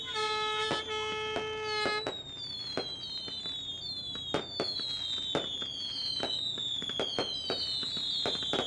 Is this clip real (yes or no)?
yes